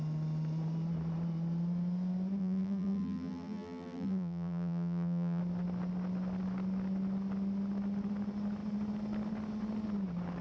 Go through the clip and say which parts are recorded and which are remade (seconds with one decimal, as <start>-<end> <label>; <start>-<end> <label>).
0.0-2.4 recorded; 2.4-5.4 remade; 5.4-10.4 recorded